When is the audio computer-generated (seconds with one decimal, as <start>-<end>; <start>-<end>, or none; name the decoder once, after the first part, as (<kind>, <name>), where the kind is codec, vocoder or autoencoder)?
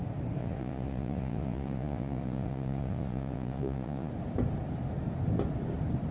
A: 0.4-4.1 (vocoder, Vocos)